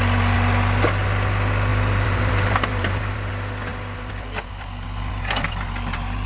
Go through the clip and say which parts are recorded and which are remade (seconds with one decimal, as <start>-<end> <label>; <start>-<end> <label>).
0.0-1.7 recorded; 1.7-3.1 remade; 3.1-6.3 recorded